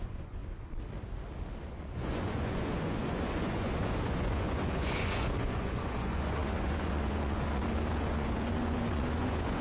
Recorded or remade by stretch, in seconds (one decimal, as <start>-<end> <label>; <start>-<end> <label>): 0.0-0.4 remade; 0.4-1.7 recorded; 1.7-9.6 remade